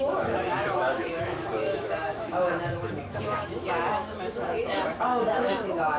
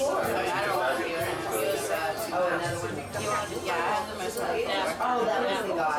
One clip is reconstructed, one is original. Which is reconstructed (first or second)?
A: first